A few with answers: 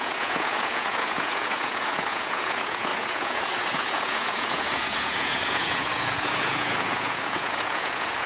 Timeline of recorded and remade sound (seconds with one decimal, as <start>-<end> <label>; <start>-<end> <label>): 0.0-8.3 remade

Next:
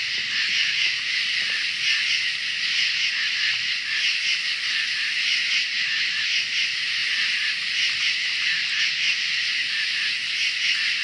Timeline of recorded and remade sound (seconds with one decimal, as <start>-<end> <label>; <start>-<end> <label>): 0.0-0.6 recorded; 0.6-1.2 remade; 1.2-11.0 recorded

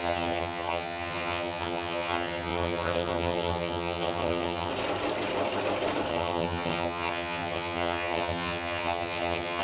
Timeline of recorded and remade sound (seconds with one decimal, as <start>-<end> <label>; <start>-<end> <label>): 0.0-4.7 remade; 4.7-6.1 recorded; 6.1-9.6 remade

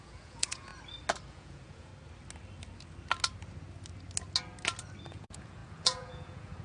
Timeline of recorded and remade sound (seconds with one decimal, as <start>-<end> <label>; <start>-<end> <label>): 0.0-0.7 remade; 0.7-1.3 recorded; 1.3-1.9 remade; 1.9-5.1 recorded; 5.1-6.6 remade

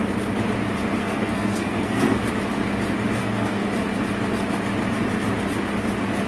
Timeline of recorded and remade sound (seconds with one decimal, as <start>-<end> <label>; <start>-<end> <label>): 0.0-1.0 recorded; 1.0-2.3 remade; 2.3-3.2 recorded; 3.2-3.7 remade; 3.7-6.3 recorded

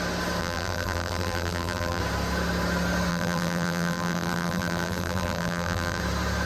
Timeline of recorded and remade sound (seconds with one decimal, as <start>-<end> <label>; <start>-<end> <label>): 0.0-0.4 recorded; 0.4-2.0 remade; 2.0-3.1 recorded; 3.1-6.0 remade; 6.0-6.5 recorded

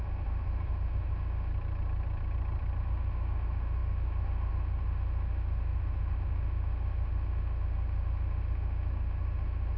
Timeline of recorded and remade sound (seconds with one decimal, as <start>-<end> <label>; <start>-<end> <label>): 0.0-1.5 remade; 1.5-2.8 recorded; 2.8-9.8 remade

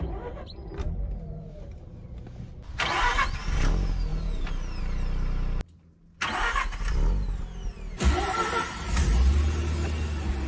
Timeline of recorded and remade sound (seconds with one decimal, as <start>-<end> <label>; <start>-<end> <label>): 0.0-4.1 recorded; 4.1-4.8 remade; 4.8-10.5 recorded